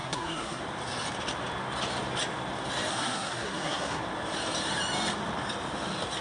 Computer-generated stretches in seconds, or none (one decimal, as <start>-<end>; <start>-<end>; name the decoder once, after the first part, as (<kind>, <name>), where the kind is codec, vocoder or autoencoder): 0.0-0.6 (codec, SNAC); 2.9-4.0